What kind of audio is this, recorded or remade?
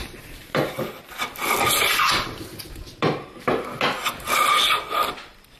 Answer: recorded